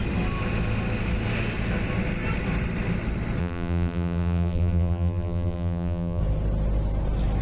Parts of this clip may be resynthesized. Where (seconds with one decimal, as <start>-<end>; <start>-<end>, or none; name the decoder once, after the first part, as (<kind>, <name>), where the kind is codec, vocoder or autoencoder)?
3.4-6.2 (vocoder, BigVGAN v2)